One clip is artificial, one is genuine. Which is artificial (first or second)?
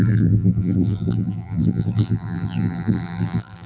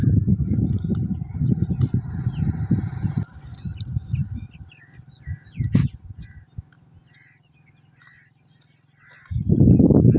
first